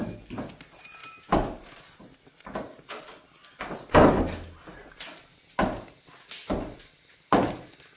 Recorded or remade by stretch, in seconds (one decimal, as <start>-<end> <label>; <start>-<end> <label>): 0.0-8.0 recorded